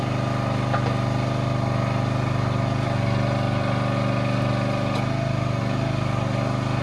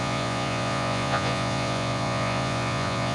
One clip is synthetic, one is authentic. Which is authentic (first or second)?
first